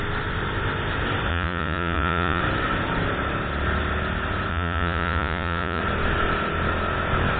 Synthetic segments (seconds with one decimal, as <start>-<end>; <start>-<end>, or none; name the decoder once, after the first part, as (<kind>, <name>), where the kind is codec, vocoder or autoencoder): 1.3-2.4 (vocoder, Vocos); 4.5-5.8